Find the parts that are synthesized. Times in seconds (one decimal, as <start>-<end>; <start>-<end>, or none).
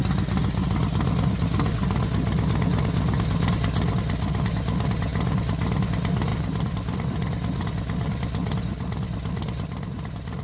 6.3-10.4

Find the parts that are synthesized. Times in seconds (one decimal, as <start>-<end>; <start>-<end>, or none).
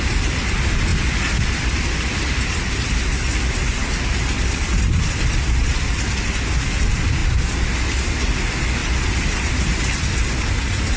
0.0-10.2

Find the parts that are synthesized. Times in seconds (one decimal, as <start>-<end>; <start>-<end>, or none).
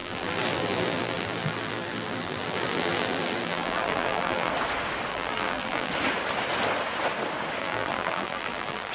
0.0-4.5; 5.1-5.9; 7.6-8.9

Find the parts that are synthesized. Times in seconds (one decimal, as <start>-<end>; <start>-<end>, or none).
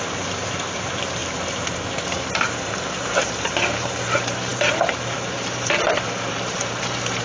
0.0-7.2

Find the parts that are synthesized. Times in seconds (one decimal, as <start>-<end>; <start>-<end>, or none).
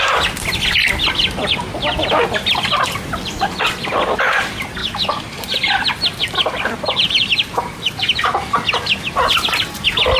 2.2-2.8; 4.8-8.2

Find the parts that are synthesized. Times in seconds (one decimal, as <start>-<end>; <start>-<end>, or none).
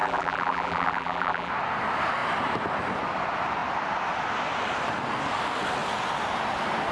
0.0-1.5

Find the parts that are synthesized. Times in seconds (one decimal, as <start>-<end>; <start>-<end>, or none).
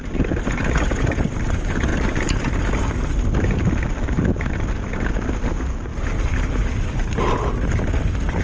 1.9-3.0